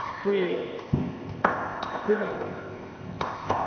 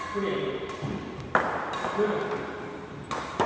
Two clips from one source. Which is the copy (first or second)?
first